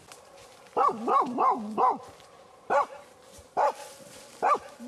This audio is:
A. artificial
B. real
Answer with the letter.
B